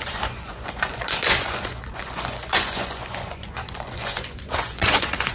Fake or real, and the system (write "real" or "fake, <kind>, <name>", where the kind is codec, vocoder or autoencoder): fake, vocoder, Vocos